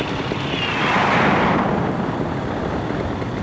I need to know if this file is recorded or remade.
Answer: recorded